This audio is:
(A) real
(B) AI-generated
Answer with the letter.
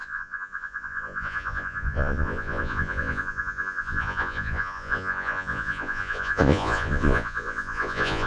B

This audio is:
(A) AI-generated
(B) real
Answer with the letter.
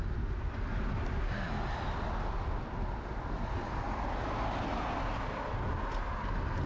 B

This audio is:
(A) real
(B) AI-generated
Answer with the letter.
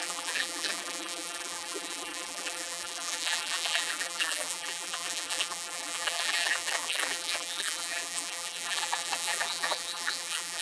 B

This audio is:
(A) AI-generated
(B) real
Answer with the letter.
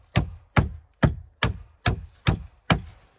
B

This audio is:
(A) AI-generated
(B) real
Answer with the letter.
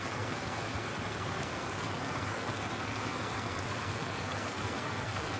A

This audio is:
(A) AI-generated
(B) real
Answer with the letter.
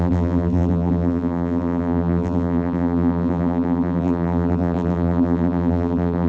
A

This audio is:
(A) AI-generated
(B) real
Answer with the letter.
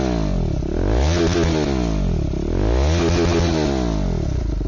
B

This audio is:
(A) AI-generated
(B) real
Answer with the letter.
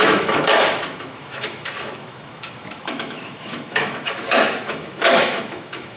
A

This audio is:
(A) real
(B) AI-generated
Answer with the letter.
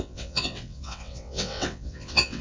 B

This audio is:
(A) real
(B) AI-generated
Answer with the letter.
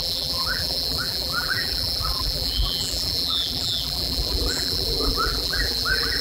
B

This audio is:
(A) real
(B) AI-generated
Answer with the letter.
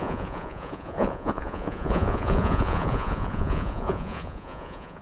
B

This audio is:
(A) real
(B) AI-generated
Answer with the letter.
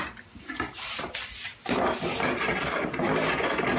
A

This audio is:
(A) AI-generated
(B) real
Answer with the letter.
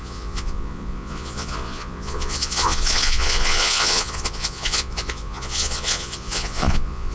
A